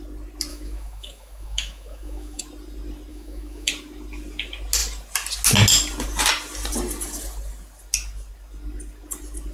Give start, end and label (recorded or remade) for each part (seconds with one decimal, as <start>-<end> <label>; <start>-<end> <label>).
0.0-0.5 recorded; 0.5-2.4 remade; 2.4-3.1 recorded; 3.1-3.7 remade; 3.7-9.5 recorded

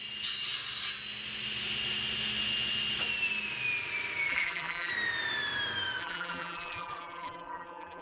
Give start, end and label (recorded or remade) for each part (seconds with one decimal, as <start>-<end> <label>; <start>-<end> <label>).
0.0-4.3 recorded; 4.3-4.9 remade; 4.9-6.0 recorded; 6.0-8.0 remade